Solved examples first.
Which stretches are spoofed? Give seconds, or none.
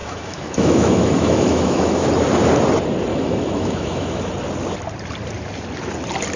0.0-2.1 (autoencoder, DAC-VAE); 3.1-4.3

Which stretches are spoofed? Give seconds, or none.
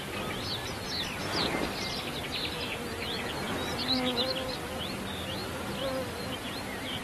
none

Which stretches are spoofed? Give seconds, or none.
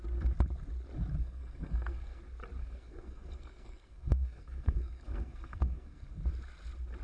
1.2-2.2 (codec, SNAC); 2.6-6.2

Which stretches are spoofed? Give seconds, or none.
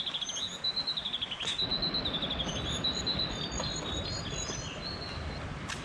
none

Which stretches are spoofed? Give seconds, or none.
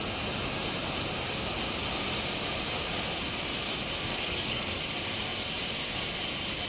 4.1-4.8 (codec, DAC)